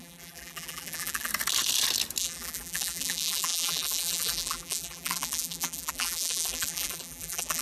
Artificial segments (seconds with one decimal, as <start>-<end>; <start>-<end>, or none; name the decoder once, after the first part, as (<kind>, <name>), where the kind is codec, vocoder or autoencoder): 0.0-1.3 (vocoder, BigVGAN v2); 2.2-7.6